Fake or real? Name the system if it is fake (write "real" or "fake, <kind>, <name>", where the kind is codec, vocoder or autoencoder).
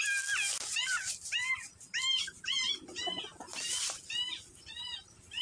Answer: real